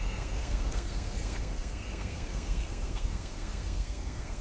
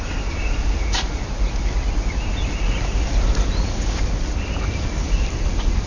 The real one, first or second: second